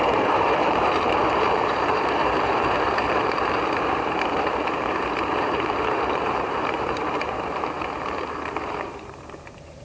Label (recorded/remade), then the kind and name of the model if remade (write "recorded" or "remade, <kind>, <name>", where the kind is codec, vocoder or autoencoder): remade, vocoder, BigVGAN v2